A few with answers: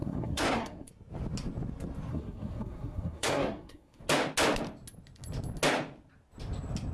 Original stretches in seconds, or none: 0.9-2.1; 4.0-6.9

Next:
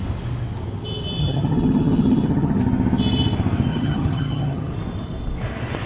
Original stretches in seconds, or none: 0.0-1.2; 2.6-3.7; 4.7-5.9

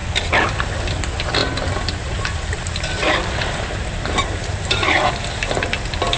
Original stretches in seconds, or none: 0.0-1.4; 5.1-6.2

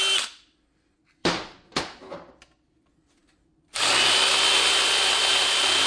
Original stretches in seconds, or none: 0.0-1.2; 1.8-3.2; 5.3-5.9

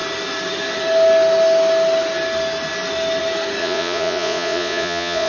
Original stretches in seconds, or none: 0.0-3.6

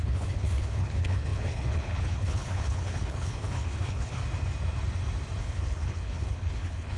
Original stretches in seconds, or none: 4.2-5.4

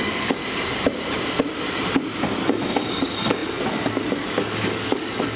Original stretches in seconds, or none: 0.4-2.9